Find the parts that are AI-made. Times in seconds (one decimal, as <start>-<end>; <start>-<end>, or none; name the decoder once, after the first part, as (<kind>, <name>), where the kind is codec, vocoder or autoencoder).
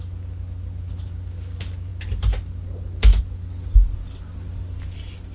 none